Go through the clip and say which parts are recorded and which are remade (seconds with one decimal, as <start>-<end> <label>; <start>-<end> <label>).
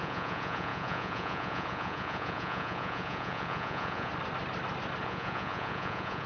0.0-4.1 remade; 4.1-5.0 recorded; 5.0-6.3 remade